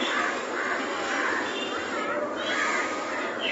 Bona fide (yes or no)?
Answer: yes